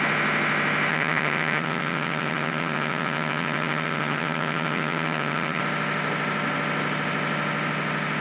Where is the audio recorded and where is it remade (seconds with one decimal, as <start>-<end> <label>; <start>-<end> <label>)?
0.0-0.9 recorded; 0.9-5.6 remade; 5.6-8.2 recorded